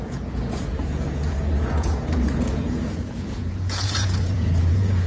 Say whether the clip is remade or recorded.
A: remade